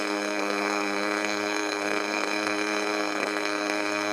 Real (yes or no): no